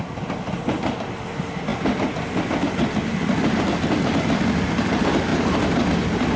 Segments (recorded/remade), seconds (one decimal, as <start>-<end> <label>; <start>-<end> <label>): 0.0-6.4 recorded